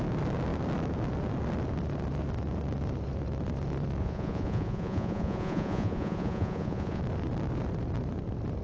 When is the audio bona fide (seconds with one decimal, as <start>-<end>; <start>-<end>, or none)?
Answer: 0.0-4.0; 7.0-8.6